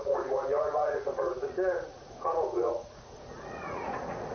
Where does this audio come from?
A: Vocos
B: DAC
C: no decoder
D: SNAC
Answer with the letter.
A